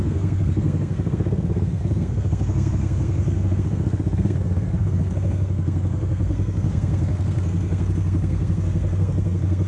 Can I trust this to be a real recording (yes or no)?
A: no